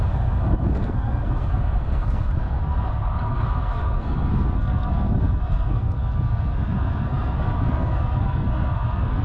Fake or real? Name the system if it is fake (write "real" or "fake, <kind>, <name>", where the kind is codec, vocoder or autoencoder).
fake, codec, SNAC